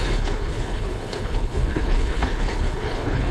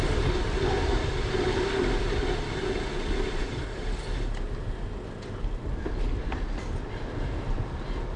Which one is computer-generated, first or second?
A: first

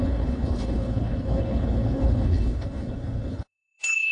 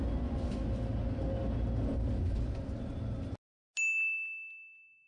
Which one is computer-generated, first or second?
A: first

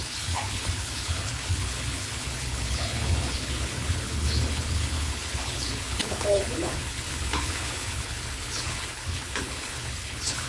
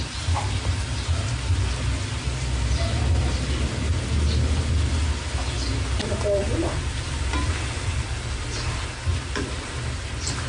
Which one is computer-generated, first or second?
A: first